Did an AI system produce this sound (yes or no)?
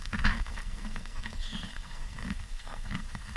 yes